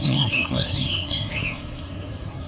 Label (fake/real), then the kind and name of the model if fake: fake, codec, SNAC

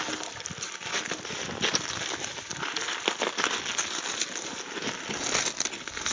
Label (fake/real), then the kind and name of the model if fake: real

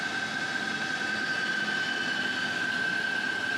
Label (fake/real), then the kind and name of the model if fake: fake, vocoder, BigVGAN v2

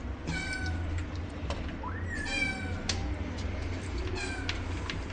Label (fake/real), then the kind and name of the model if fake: real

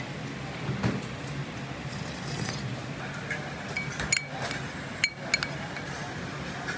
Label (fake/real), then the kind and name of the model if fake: real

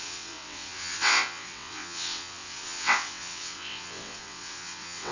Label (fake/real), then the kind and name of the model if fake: fake, vocoder, WaveNeXt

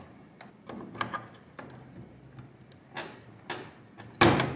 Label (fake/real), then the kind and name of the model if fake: real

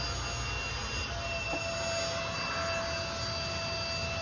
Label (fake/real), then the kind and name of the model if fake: real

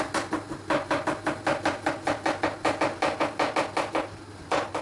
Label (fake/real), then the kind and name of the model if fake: real